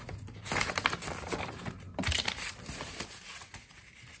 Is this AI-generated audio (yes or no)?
no